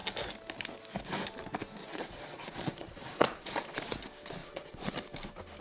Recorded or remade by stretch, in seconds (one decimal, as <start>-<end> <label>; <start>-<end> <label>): 0.0-1.8 recorded; 1.8-3.9 remade; 3.9-4.4 recorded; 4.4-4.9 remade; 4.9-5.6 recorded